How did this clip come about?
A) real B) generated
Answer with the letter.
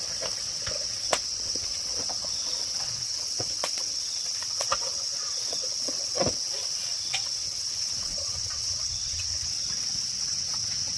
B